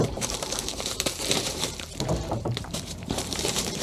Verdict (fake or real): fake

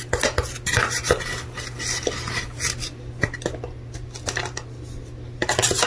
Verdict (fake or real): real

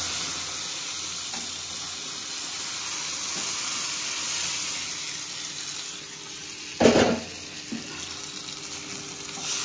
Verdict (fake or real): real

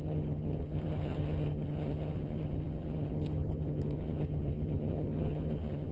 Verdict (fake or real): fake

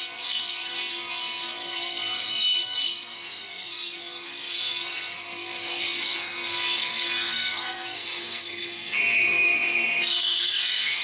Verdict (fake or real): fake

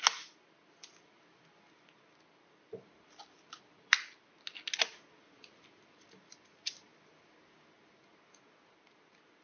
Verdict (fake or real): real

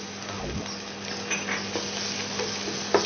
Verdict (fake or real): real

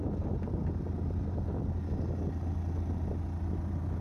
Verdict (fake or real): real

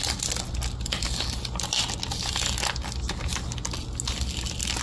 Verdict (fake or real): real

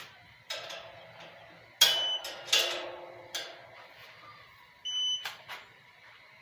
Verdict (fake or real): real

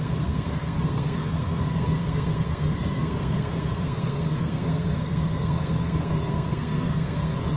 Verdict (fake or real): fake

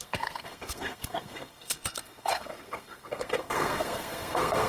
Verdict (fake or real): fake